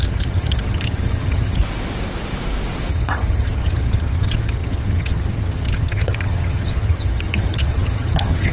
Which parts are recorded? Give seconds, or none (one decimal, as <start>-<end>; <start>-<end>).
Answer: 1.6-2.9